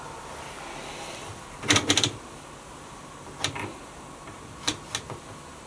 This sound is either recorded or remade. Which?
recorded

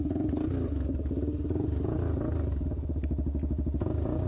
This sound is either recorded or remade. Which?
recorded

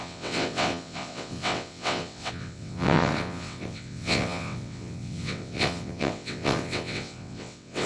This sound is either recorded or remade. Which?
remade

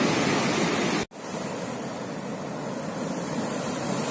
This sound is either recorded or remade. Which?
recorded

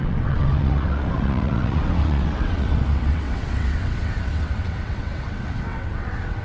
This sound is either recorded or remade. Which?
remade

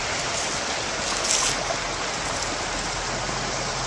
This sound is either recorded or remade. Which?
recorded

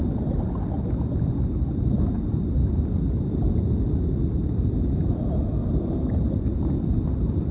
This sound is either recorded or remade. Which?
recorded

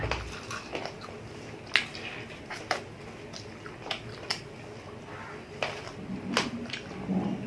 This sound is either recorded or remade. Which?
recorded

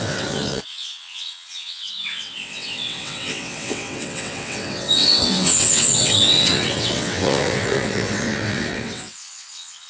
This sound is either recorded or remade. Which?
remade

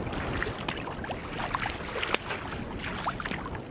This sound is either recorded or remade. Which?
recorded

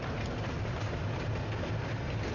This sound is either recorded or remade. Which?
recorded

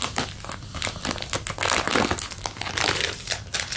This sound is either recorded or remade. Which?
recorded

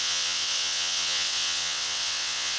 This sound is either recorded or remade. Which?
remade